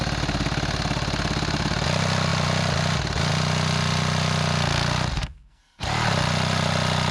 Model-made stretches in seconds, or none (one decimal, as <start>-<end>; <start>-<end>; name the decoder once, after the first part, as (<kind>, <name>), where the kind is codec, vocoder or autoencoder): 5.2-5.8 (codec, SNAC)

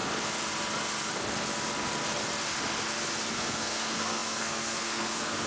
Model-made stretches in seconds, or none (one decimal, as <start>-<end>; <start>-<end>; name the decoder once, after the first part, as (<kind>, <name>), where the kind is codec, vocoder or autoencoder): 3.3-5.5 (codec, SNAC)